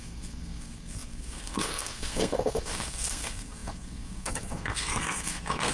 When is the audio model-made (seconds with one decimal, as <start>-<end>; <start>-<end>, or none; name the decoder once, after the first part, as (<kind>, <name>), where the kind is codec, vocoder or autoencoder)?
0.0-5.7 (codec, SNAC)